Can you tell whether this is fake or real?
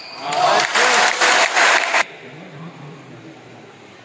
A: real